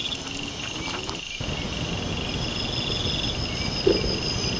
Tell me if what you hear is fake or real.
real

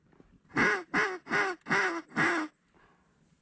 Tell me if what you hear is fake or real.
real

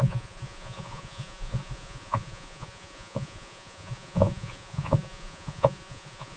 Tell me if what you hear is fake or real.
fake